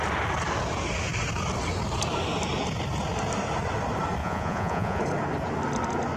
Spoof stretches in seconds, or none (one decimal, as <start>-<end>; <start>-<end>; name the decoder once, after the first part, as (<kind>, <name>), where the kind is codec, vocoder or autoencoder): 4.2-5.0 (vocoder, Vocos)